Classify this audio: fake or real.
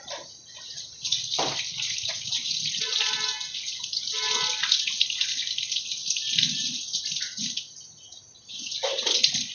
real